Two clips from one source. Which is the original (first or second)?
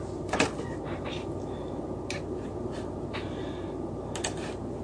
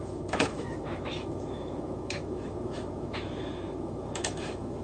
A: first